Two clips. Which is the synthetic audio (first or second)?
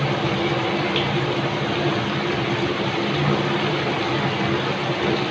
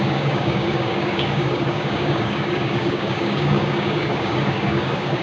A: second